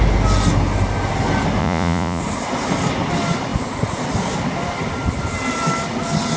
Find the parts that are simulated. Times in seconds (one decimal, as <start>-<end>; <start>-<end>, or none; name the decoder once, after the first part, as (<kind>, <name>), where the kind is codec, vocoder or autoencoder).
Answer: 1.6-2.2 (vocoder, Vocos)